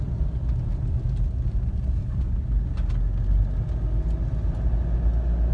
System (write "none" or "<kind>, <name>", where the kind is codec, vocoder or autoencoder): none